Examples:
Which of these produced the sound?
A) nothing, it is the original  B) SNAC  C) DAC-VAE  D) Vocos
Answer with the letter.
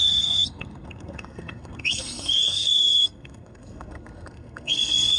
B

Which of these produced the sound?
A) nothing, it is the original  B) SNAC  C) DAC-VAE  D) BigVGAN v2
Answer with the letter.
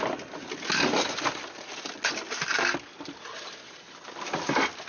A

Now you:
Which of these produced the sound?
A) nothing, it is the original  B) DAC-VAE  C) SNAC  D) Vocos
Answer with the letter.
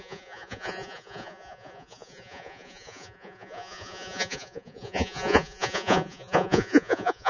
D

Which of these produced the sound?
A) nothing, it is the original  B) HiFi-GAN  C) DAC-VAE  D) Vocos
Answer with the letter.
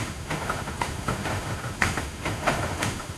C